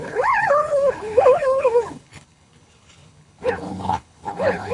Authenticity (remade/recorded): remade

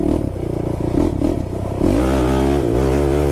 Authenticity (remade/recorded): recorded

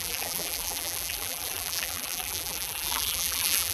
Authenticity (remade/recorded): remade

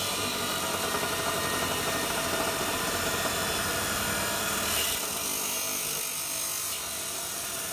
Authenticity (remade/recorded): recorded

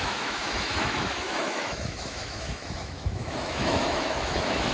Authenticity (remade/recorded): remade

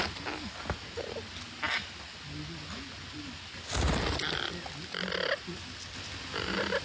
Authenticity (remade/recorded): recorded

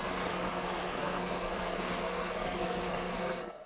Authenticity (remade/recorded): remade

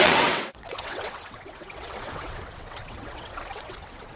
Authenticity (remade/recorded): remade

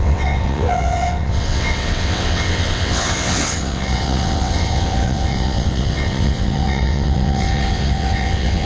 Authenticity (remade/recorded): remade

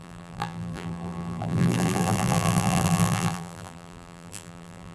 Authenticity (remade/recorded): remade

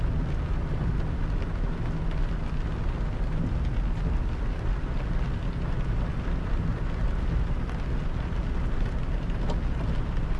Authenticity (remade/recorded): recorded